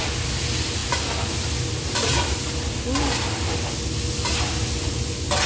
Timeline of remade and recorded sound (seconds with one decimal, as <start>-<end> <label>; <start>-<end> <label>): 0.0-5.5 recorded